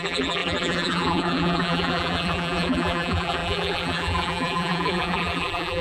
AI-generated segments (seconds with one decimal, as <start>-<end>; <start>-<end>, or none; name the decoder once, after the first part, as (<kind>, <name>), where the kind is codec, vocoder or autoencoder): 0.0-5.8 (vocoder, BigVGAN v2)